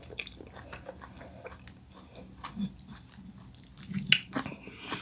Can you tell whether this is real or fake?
real